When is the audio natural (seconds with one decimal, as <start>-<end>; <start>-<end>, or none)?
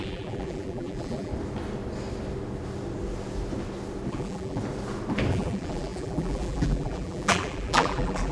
1.3-4.1; 4.6-5.3